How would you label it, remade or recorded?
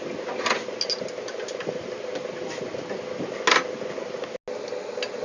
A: recorded